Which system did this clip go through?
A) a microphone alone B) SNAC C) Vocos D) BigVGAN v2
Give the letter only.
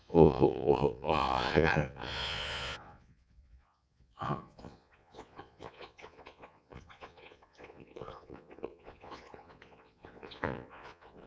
C